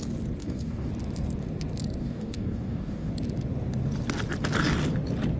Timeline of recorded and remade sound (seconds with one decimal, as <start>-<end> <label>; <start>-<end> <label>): 0.0-0.4 recorded; 0.4-0.9 remade; 0.9-2.0 recorded; 2.0-3.1 remade; 3.1-5.4 recorded